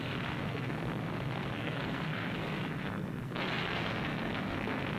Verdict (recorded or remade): remade